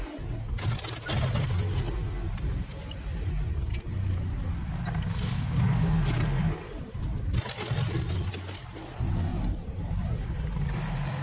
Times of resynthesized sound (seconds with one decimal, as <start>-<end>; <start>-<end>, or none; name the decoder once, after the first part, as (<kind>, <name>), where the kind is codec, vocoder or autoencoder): 9.3-10.6 (vocoder, BigVGAN v2)